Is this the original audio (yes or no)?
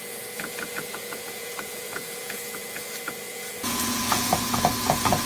no